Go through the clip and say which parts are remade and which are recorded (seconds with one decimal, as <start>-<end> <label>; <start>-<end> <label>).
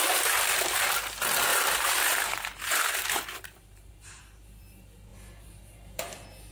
0.0-1.5 recorded; 1.5-4.2 remade; 4.2-6.5 recorded